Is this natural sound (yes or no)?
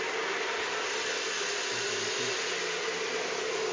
yes